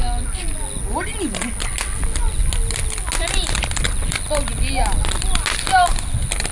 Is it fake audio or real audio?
real